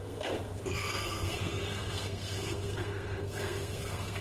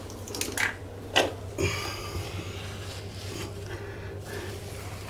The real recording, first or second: second